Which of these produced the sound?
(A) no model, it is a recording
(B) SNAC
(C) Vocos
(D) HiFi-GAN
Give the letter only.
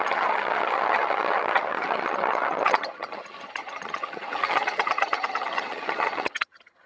D